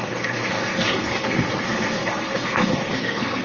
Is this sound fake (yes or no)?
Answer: yes